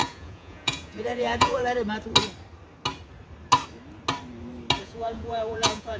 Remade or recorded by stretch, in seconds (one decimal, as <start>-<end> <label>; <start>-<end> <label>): 0.0-1.6 remade; 1.6-4.8 recorded; 4.8-6.0 remade